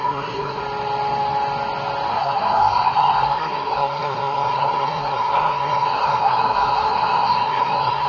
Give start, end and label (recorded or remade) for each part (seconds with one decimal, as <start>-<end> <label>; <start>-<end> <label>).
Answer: 0.0-0.6 remade; 0.6-2.1 recorded; 2.1-8.1 remade

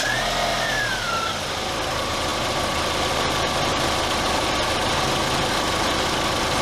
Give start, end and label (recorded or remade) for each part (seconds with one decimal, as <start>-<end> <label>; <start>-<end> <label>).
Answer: 0.0-0.5 recorded; 0.5-1.7 remade; 1.7-6.6 recorded